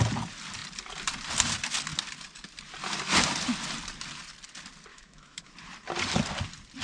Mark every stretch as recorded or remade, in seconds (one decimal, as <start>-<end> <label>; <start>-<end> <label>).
0.0-4.9 recorded; 4.9-5.5 remade; 5.5-6.8 recorded